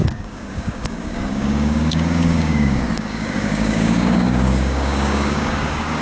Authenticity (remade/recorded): remade